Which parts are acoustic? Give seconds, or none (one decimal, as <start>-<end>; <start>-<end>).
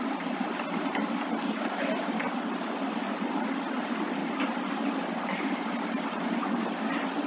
0.0-7.3